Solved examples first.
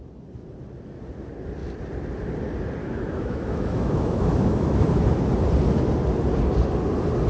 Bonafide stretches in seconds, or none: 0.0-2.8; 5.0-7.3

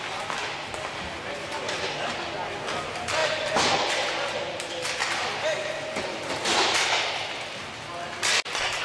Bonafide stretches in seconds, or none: 0.0-8.8

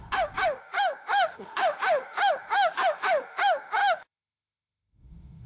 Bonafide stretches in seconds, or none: none

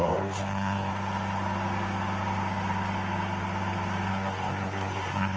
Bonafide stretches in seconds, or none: 0.9-4.1

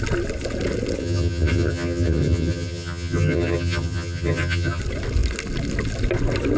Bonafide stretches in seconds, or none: 0.0-1.0; 4.8-6.6

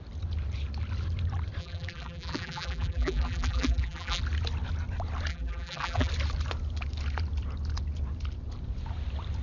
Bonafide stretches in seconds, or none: 0.0-1.6; 4.2-5.3; 6.1-9.4

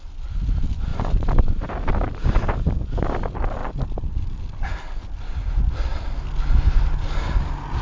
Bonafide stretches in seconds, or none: 0.0-0.9; 2.7-7.8